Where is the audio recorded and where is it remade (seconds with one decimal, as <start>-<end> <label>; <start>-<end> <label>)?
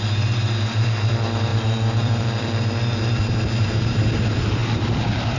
0.0-1.5 recorded; 1.5-2.6 remade; 2.6-4.6 recorded; 4.6-5.4 remade